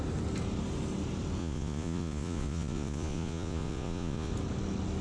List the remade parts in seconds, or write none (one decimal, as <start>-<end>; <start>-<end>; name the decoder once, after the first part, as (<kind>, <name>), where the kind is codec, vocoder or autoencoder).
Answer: 1.4-4.3 (vocoder, Vocos)